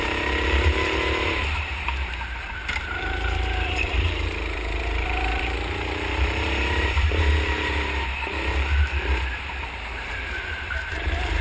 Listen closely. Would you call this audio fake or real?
fake